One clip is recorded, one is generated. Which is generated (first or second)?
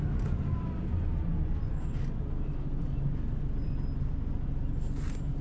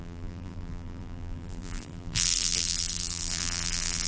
second